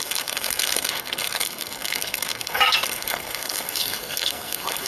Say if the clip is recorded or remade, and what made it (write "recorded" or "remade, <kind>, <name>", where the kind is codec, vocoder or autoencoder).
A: remade, codec, SNAC